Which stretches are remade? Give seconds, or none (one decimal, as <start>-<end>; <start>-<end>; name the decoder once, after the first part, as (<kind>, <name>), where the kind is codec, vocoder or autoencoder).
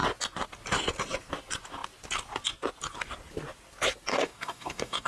4.1-5.1 (codec, DAC)